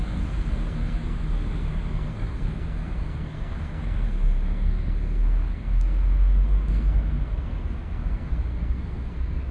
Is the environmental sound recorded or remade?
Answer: remade